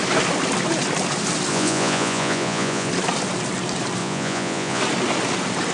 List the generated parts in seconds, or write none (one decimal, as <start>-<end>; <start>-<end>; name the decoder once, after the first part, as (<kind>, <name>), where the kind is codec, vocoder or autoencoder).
1.5-2.9 (vocoder, Vocos); 4.0-4.8